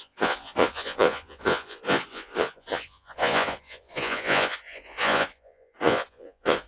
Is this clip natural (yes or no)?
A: no